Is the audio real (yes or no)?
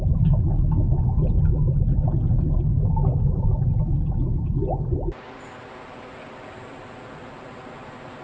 yes